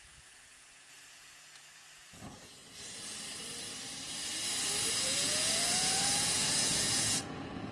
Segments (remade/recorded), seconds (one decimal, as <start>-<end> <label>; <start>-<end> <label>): 0.0-2.6 remade; 2.6-4.9 recorded; 4.9-7.7 remade